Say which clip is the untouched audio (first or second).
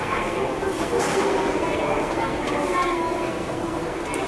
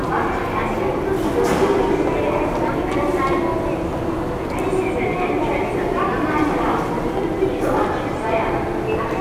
second